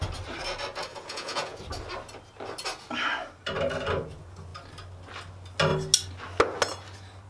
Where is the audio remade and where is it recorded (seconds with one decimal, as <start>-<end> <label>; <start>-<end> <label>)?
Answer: 0.0-0.9 recorded; 0.9-1.6 remade; 1.6-7.3 recorded